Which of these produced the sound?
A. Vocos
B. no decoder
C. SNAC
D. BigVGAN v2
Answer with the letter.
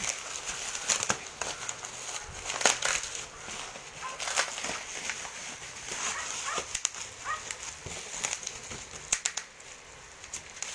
B